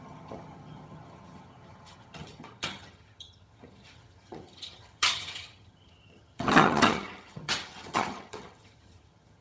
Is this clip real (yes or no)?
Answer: no